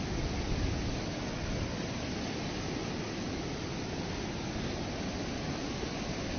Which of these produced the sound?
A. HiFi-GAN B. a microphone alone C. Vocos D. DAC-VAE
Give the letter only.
B